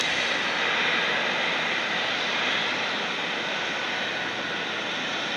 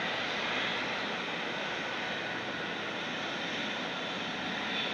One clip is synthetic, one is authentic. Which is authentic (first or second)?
second